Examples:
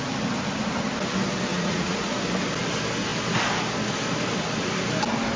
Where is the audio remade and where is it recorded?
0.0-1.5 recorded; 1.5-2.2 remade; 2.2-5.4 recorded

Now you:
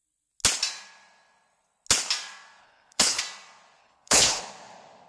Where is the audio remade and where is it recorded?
0.0-2.6 recorded; 2.6-3.2 remade; 3.2-3.8 recorded; 3.8-4.4 remade; 4.4-5.1 recorded

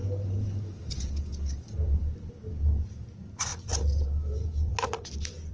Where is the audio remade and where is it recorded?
0.0-2.3 remade; 2.3-3.5 recorded; 3.5-4.7 remade; 4.7-5.5 recorded

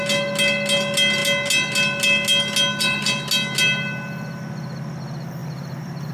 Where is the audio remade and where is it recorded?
0.0-5.4 recorded; 5.4-6.1 remade

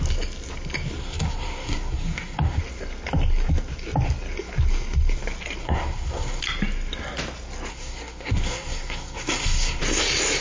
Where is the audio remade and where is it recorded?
0.0-1.0 recorded; 1.0-2.6 remade; 2.6-5.6 recorded; 5.6-6.4 remade; 6.4-7.7 recorded; 7.7-9.8 remade; 9.8-10.4 recorded

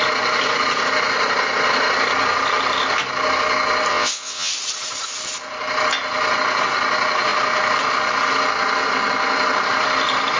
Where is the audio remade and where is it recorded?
0.0-3.9 recorded; 3.9-4.5 remade; 4.5-10.4 recorded

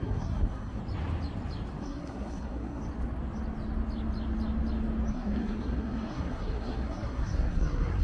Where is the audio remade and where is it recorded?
0.0-0.8 remade; 0.8-1.8 recorded; 1.8-2.8 remade; 2.8-5.1 recorded; 5.1-8.0 remade

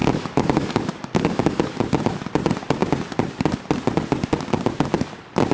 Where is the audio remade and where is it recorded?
0.0-1.8 remade; 1.8-5.5 recorded